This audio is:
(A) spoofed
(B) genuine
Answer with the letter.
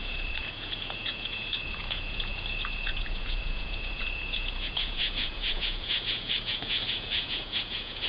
A